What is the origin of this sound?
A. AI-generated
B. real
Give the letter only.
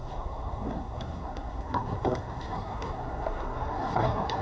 A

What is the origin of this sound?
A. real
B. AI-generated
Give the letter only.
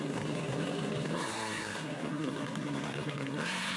B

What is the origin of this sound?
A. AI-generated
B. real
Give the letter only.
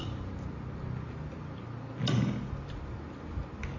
B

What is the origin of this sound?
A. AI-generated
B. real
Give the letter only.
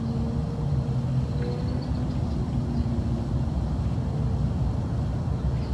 B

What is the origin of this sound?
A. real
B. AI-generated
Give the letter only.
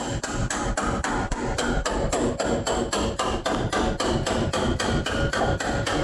A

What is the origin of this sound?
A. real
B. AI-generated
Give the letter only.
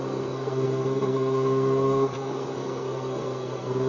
B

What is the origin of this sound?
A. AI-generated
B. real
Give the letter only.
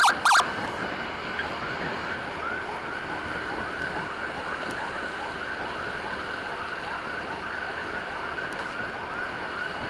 B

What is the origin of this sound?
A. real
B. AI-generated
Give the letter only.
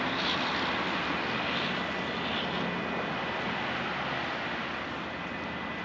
A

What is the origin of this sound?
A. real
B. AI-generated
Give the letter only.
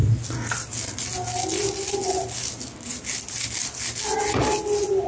A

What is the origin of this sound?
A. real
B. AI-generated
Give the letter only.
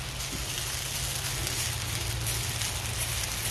A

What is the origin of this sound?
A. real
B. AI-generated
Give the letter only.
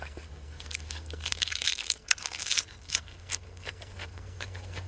B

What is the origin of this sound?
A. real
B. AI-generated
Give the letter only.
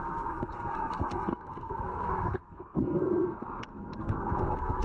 B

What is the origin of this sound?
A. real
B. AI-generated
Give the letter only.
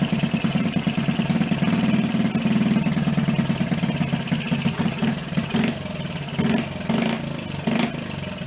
A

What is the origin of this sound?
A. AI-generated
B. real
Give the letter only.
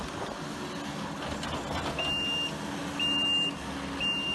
B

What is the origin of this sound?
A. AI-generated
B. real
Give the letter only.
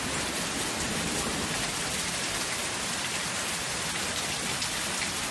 B